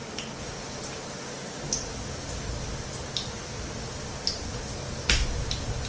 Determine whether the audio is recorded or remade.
recorded